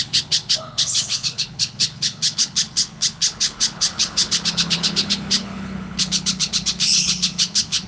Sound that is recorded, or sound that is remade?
remade